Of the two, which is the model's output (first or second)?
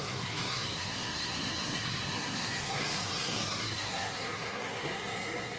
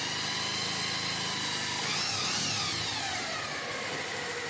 first